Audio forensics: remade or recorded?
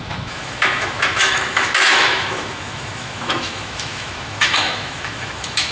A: remade